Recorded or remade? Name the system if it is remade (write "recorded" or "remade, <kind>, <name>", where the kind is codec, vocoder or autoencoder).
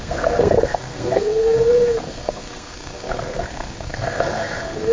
remade, codec, SNAC